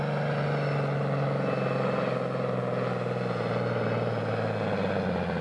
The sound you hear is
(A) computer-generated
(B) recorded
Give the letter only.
B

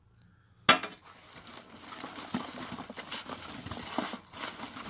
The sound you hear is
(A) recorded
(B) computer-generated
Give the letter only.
A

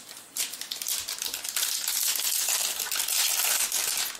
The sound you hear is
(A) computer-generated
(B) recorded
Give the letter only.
B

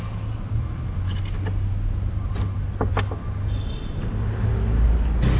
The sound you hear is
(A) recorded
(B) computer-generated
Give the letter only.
A